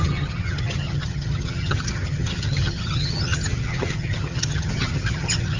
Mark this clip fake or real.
fake